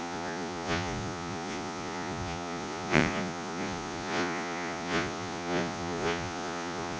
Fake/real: fake